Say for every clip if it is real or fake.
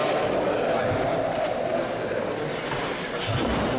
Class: real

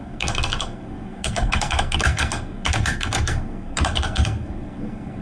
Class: fake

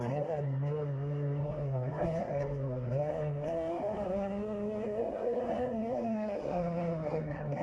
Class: fake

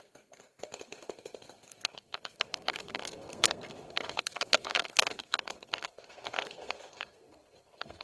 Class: fake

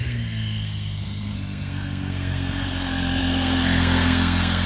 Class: fake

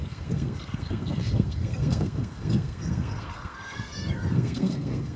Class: fake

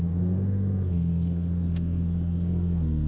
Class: fake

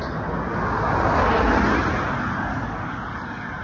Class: real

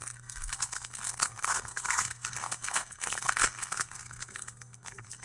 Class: fake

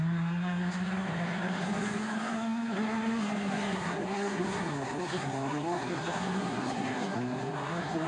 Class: fake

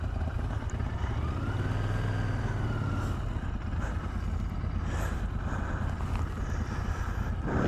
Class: real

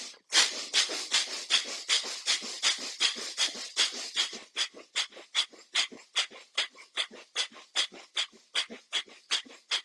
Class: real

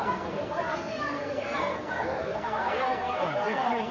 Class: fake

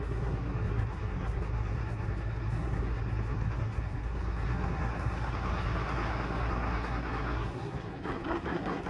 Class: fake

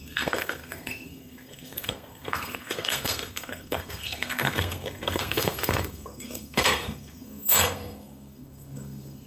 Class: fake